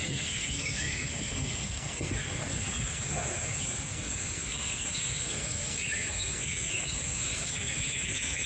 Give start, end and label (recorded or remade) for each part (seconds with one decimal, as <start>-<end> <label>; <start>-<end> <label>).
0.0-8.4 remade